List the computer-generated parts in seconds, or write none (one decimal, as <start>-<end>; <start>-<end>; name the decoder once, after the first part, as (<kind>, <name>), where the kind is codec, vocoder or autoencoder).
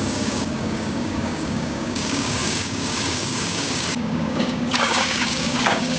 0.0-6.0 (codec, DAC)